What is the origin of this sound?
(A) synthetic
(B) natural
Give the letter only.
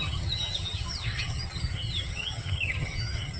A